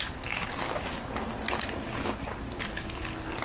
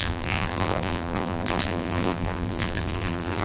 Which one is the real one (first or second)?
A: first